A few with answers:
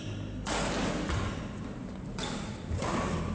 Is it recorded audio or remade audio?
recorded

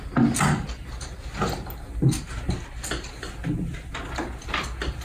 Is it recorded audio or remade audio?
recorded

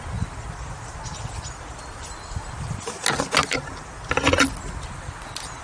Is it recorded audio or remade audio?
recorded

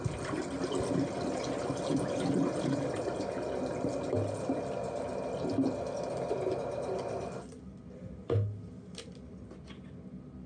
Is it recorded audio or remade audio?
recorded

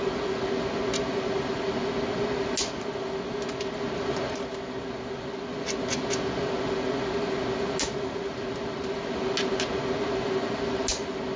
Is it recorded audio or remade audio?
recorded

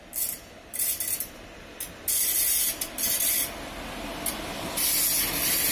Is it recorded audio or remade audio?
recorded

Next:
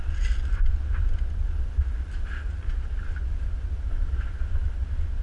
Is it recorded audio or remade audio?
recorded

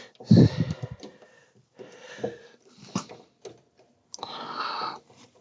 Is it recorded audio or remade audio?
recorded